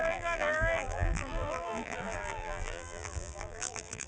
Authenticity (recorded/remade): remade